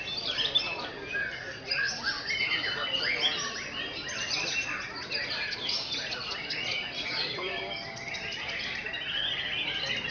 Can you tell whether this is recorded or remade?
recorded